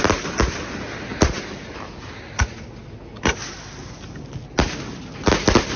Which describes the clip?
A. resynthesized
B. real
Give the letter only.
B